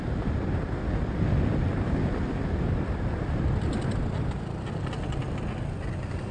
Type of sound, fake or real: real